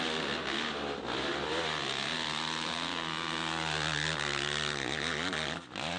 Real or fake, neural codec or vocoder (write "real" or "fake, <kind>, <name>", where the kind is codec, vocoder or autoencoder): real